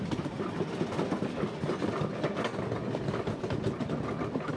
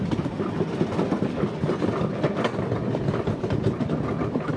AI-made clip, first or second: second